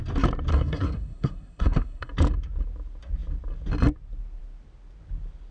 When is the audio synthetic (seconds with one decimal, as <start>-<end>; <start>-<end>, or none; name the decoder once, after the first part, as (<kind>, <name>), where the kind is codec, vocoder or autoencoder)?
0.5-2.1 (codec, SNAC)